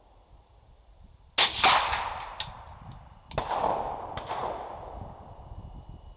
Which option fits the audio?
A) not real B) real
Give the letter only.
B